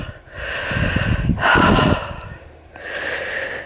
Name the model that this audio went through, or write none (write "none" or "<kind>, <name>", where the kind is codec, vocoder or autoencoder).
none